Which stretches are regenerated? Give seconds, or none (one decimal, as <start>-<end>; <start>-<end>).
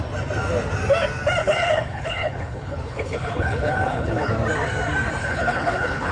1.4-4.3; 5.2-6.1